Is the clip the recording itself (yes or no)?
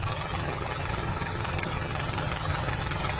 no